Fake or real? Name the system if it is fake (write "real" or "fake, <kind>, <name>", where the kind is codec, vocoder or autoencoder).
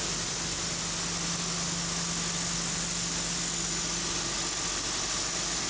real